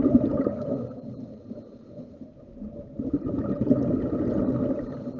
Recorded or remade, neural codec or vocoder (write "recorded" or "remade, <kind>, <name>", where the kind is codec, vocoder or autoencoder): recorded